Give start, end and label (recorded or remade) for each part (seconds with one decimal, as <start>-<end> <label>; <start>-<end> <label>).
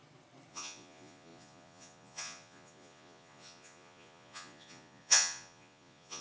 0.0-0.5 recorded; 0.5-6.2 remade